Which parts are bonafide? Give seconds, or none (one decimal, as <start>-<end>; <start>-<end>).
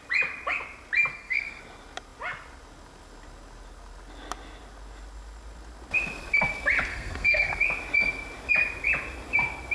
0.0-1.1; 1.6-6.9; 7.6-9.7